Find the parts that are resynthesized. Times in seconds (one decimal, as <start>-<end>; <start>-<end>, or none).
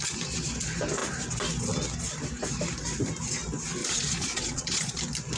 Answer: 3.8-5.0